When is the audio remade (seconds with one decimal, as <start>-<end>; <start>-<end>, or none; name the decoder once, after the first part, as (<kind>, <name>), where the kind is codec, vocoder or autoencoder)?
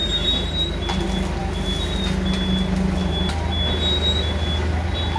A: none